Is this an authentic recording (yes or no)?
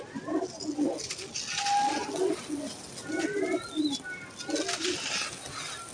yes